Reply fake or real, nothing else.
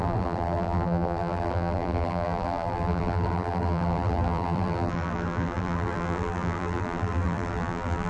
fake